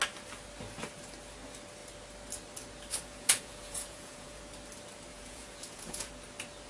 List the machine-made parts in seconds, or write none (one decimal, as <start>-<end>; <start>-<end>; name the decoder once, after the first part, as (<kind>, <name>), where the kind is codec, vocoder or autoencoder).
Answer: 2.9-4.4 (vocoder, Vocos); 5.1-6.1